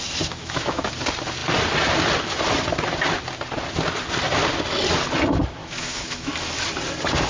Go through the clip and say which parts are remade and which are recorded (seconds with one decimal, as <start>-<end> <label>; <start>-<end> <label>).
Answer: 0.0-0.4 recorded; 0.4-0.9 remade; 0.9-5.6 recorded; 5.6-6.3 remade; 6.3-7.3 recorded